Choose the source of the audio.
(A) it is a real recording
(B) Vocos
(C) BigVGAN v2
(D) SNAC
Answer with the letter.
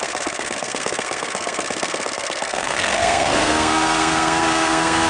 D